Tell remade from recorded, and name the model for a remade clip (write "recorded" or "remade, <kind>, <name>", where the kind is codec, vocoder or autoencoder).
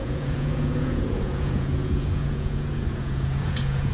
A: remade, vocoder, Vocos